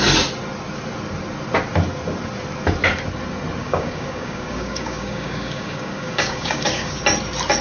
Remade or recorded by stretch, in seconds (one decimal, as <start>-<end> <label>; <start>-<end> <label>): 0.0-3.6 recorded; 3.6-7.0 remade; 7.0-7.6 recorded